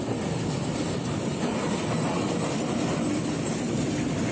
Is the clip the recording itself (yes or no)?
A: yes